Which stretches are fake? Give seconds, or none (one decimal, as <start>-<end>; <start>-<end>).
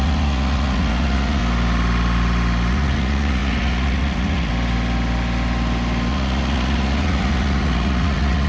0.0-1.4; 2.7-4.5; 6.1-8.5